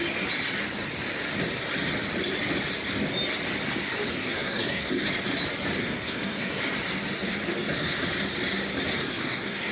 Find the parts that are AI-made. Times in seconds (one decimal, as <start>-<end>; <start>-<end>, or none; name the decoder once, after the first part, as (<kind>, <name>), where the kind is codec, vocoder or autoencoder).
4.1-4.9 (codec, SNAC); 5.8-6.6; 9.1-9.7